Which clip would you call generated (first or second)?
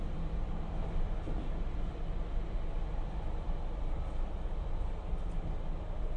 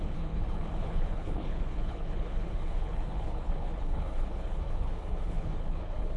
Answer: second